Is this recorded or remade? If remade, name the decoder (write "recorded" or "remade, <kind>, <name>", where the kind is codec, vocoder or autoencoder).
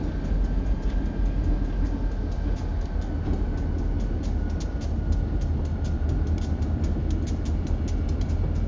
recorded